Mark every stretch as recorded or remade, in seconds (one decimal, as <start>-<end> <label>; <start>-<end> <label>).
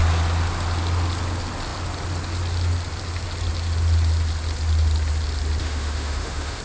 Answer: 0.0-5.6 recorded; 5.6-6.6 remade